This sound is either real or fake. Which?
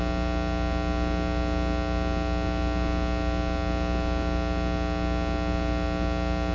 real